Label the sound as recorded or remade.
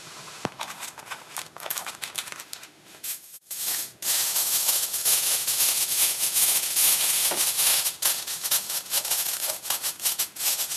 remade